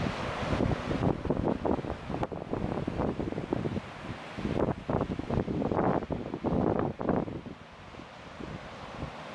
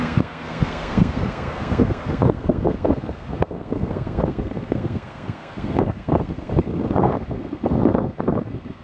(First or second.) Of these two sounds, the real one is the first